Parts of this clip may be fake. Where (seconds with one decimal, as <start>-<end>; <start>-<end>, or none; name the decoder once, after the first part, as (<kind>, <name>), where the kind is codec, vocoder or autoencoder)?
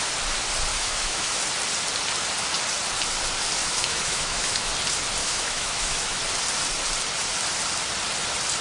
0.7-1.4 (autoencoder, DAC-VAE); 3.6-4.7; 5.2-6.2